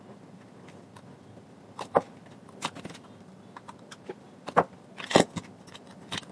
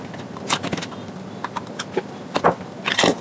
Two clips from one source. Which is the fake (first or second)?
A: first